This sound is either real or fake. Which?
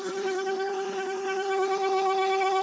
fake